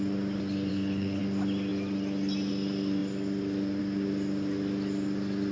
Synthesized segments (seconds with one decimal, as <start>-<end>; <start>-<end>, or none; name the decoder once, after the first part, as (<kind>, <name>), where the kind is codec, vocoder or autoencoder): 0.7-1.2 (codec, HILCodec)